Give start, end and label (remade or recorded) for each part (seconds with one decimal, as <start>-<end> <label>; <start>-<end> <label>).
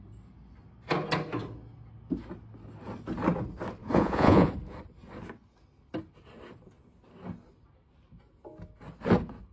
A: 0.0-3.8 recorded; 3.8-4.5 remade; 4.5-9.5 recorded